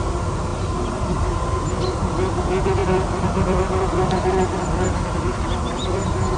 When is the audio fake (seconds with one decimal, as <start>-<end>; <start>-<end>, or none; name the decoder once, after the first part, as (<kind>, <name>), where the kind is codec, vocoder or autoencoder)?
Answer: 0.0-0.5 (vocoder, BigVGAN v2); 1.8-6.4